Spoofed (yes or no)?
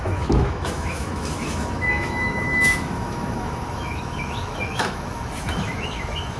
yes